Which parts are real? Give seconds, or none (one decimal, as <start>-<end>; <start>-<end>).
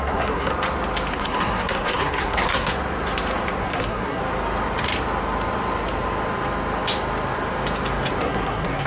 0.5-1.1; 2.7-3.6; 4.2-8.2